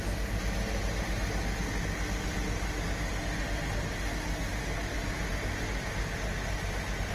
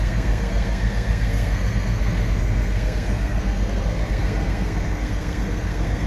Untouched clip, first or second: first